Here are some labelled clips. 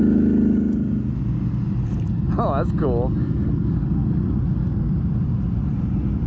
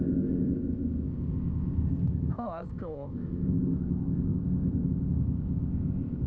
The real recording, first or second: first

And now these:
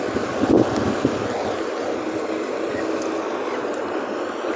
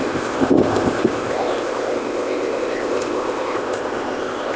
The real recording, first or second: first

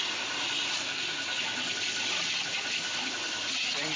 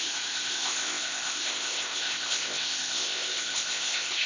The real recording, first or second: first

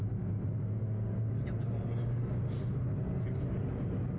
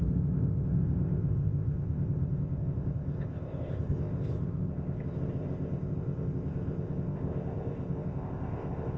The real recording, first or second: first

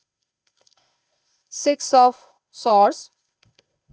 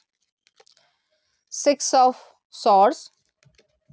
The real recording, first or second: second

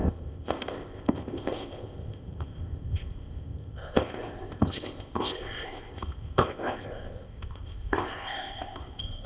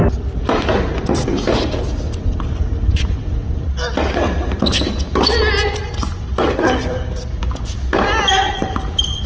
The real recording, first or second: second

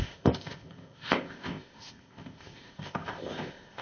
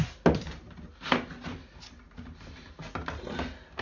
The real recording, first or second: second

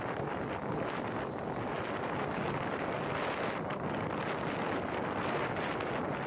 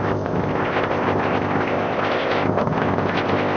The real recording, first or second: first